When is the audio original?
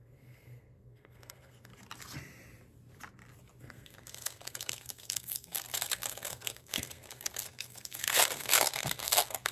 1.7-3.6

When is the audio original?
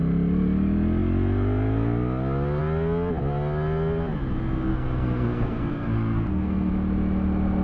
0.0-4.7; 6.7-7.6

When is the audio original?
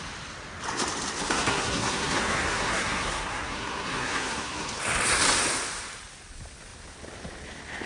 0.0-1.2; 4.8-7.9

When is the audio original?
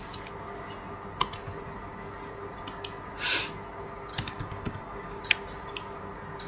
0.0-4.1; 5.2-6.5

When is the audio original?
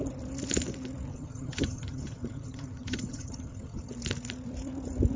0.0-1.1; 3.9-5.2